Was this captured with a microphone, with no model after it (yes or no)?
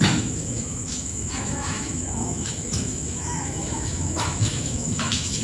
no